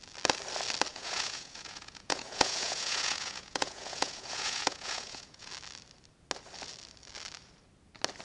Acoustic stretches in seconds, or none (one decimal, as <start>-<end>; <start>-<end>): 0.0-0.9; 5.5-8.2